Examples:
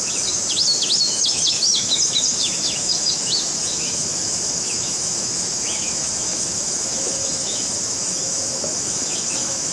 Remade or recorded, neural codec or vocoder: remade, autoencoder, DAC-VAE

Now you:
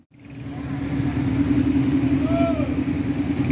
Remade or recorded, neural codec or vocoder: recorded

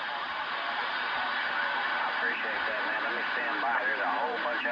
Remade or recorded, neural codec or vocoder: remade, vocoder, BigVGAN v2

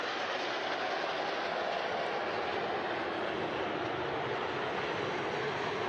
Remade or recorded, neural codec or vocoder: recorded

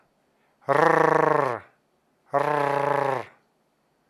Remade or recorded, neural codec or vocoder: recorded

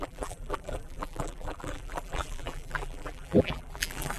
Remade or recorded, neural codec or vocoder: remade, vocoder, BigVGAN v2